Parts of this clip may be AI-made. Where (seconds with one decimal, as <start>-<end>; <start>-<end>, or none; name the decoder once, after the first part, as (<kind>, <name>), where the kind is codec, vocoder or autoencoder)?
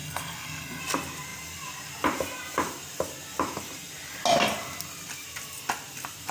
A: 0.0-0.8 (codec, SNAC)